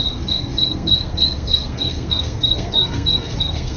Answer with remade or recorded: remade